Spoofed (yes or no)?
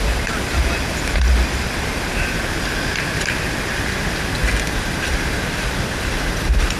no